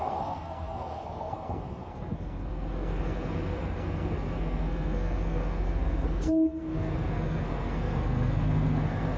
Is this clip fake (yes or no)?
yes